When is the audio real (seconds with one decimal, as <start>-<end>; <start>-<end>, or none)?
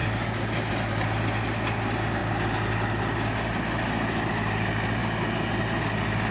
0.0-6.3